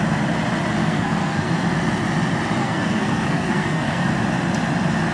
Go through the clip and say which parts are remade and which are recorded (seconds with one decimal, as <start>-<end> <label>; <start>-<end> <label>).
0.0-0.8 recorded; 0.8-1.5 remade; 1.5-2.6 recorded; 2.6-4.1 remade; 4.1-5.1 recorded